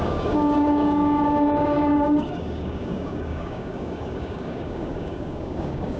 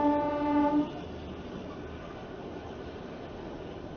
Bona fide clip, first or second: second